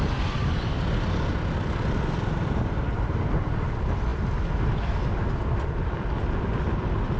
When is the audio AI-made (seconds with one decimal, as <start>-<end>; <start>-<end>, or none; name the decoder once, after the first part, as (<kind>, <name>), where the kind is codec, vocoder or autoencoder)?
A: none